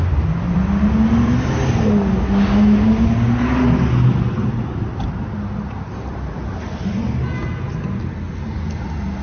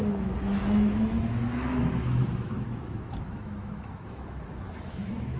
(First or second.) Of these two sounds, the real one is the first